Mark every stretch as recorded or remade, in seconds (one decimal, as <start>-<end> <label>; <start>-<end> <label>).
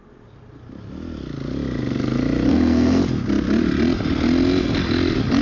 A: 0.0-2.5 recorded; 2.5-3.0 remade; 3.0-5.4 recorded